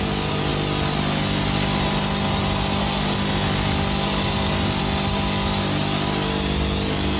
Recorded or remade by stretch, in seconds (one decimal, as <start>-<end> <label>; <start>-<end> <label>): 0.0-7.2 recorded